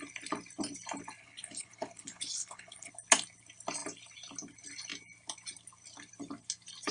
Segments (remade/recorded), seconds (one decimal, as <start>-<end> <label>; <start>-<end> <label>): 0.0-1.2 recorded; 1.2-2.9 remade; 2.9-6.9 recorded